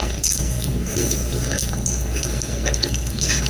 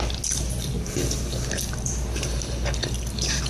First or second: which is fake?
first